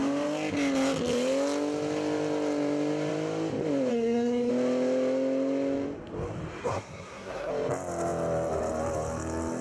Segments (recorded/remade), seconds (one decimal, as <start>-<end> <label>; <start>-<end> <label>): 0.0-3.9 recorded; 3.9-4.5 remade; 4.5-6.6 recorded; 6.6-7.5 remade; 7.5-9.6 recorded